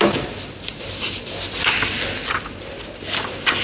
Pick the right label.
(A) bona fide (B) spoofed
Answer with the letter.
A